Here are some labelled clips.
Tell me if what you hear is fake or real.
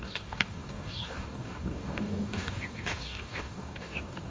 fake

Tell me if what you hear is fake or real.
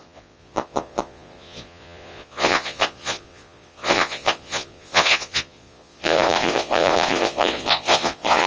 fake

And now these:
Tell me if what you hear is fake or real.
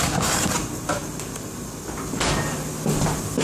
real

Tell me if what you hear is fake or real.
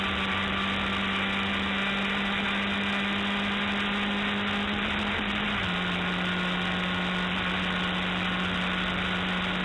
real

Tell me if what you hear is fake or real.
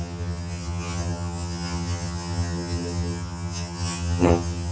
fake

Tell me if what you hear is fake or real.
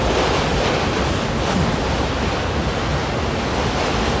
real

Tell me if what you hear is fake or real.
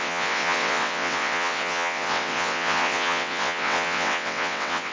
fake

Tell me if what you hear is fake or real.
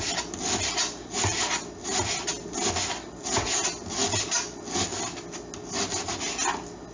real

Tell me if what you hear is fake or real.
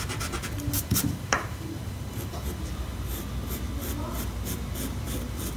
real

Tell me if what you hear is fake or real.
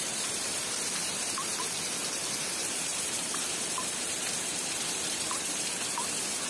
fake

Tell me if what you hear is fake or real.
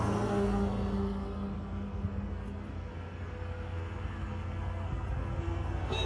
fake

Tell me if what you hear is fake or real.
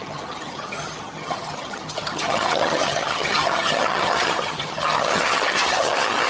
fake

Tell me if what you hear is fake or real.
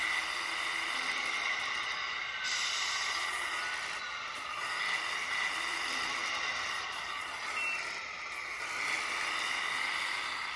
real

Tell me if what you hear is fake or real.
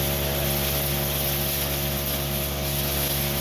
real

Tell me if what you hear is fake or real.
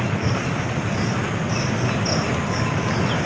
real